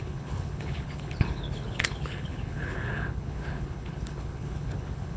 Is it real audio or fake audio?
fake